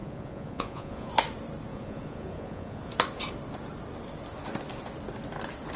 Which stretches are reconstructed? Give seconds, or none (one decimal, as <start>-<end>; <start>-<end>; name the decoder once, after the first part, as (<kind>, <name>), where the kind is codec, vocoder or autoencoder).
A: 0.0-1.1 (vocoder, Vocos); 1.7-2.9